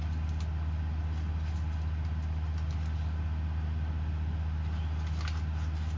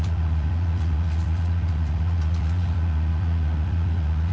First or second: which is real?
first